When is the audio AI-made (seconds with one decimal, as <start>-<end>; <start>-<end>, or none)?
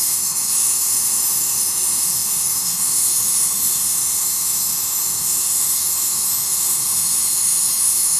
0.0-8.2